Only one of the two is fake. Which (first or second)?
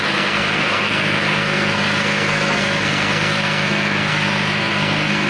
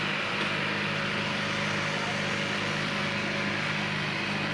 first